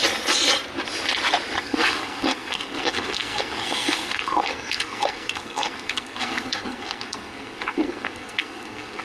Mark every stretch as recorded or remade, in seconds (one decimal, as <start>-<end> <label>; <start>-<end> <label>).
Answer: 0.0-1.6 recorded; 1.6-9.0 remade